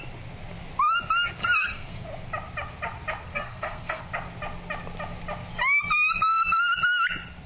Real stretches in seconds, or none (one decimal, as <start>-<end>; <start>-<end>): 0.0-1.4; 2.0-3.3; 4.0-7.5